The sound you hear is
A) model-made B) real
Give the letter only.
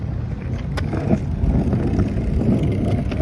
B